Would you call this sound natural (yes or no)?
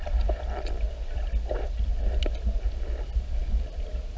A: yes